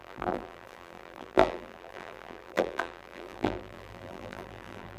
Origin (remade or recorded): remade